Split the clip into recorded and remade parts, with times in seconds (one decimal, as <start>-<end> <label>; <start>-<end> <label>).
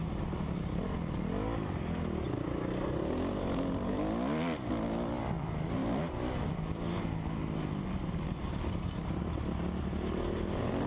0.0-10.9 recorded